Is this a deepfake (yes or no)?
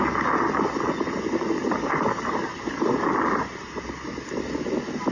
no